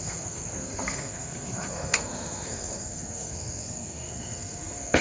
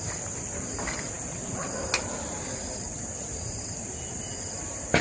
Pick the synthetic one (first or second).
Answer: first